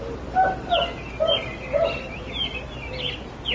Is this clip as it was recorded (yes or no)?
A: yes